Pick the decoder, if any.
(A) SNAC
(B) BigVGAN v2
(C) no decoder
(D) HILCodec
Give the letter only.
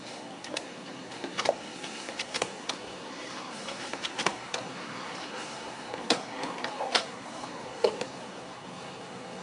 A